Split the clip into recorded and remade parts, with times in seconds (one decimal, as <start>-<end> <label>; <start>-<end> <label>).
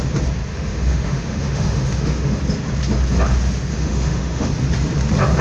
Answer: 0.0-0.5 recorded; 0.5-2.4 remade; 2.4-3.7 recorded; 3.7-4.5 remade; 4.5-5.4 recorded